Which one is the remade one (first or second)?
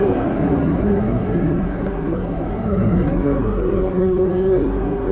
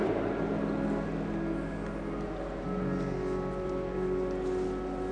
first